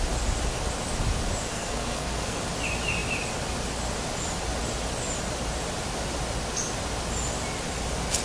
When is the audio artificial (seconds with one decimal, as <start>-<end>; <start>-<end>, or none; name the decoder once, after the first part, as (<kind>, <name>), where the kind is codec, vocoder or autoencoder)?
1.5-2.4 (codec, SNAC)